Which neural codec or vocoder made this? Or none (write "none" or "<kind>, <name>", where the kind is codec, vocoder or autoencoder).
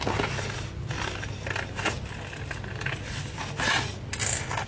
none